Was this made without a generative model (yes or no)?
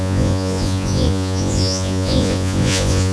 no